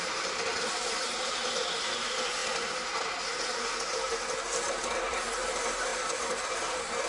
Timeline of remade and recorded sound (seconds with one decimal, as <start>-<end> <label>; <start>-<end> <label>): 0.0-1.4 remade; 1.4-1.9 recorded; 1.9-2.4 remade; 2.4-3.8 recorded; 3.8-5.9 remade; 5.9-6.5 recorded; 6.5-7.1 remade